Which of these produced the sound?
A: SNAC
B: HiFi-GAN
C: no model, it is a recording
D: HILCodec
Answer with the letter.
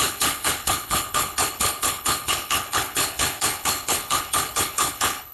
D